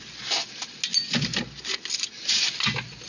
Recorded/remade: recorded